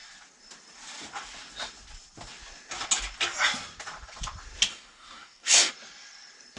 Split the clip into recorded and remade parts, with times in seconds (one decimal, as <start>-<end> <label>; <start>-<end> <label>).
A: 0.0-4.7 recorded; 4.7-5.7 remade; 5.7-6.6 recorded